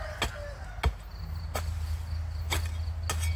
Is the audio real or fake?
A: real